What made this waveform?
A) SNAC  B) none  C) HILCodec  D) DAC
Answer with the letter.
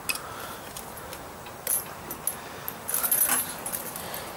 B